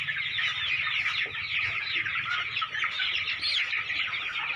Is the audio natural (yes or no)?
yes